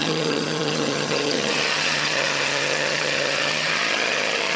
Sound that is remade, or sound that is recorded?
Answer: remade